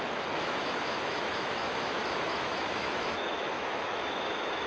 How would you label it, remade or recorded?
remade